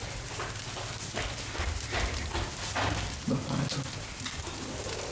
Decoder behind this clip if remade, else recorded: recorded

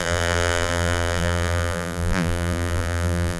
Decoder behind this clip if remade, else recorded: remade, vocoder, BigVGAN v2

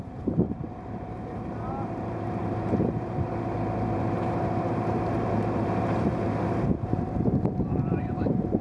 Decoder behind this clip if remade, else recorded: remade, vocoder, BigVGAN v2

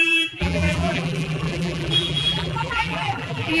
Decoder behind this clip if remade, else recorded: remade, vocoder, BigVGAN v2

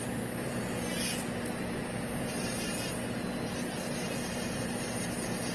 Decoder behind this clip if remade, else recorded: recorded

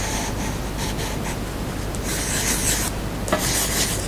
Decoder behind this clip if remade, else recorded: recorded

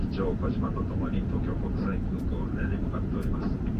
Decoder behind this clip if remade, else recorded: remade, vocoder, BigVGAN v2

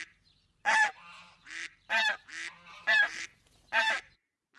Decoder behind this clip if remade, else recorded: remade, vocoder, BigVGAN v2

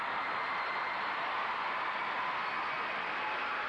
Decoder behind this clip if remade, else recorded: recorded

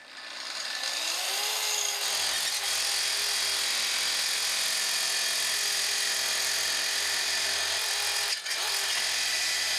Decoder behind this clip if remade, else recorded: recorded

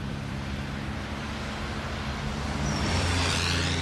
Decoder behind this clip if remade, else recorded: remade, vocoder, BigVGAN v2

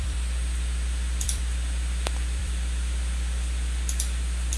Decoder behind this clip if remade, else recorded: remade, vocoder, BigVGAN v2